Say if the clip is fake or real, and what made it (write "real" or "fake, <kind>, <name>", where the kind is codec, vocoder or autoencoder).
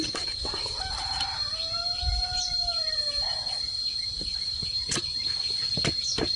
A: fake, vocoder, BigVGAN v2